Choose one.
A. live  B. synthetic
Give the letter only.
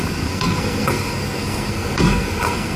B